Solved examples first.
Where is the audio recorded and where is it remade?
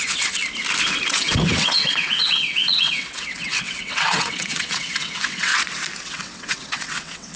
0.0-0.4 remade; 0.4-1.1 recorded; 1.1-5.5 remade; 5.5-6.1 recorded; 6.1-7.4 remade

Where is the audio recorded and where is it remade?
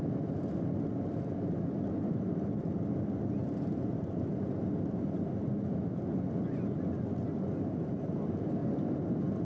0.0-9.4 recorded